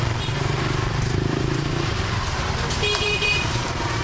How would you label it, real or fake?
fake